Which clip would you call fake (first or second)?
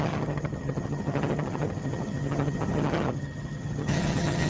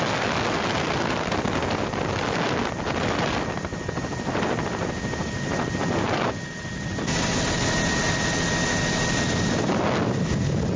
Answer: first